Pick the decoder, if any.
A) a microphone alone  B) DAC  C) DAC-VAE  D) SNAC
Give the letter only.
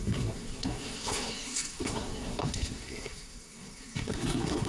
D